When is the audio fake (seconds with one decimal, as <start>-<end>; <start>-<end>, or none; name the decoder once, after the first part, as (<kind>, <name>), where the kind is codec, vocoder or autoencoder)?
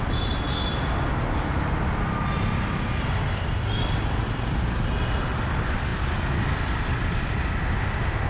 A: none